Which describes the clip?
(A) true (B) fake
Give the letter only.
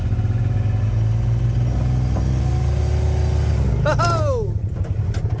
A